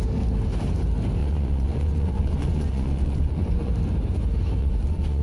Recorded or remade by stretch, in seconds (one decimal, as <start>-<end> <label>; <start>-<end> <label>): 0.0-1.2 recorded; 1.2-3.7 remade; 3.7-4.6 recorded; 4.6-5.2 remade